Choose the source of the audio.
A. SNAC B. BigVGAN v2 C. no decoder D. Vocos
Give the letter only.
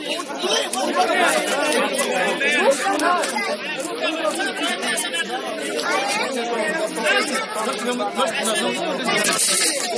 C